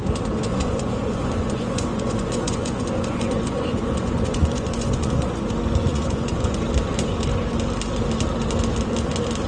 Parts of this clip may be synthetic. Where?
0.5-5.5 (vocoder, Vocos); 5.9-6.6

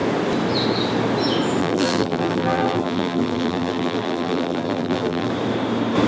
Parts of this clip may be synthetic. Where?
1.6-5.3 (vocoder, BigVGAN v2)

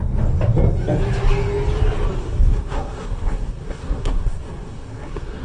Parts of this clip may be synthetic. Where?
2.2-5.4 (codec, SNAC)